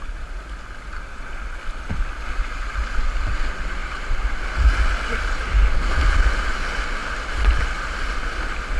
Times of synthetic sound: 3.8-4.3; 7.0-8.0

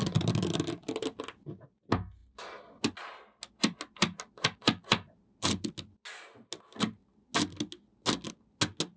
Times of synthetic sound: none

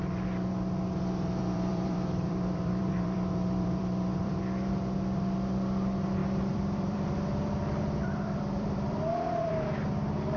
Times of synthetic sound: 1.4-4.4; 6.2-10.4

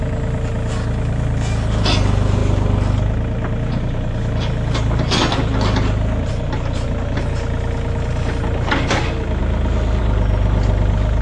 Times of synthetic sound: none

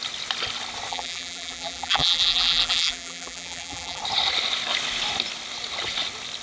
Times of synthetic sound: 0.9-4.0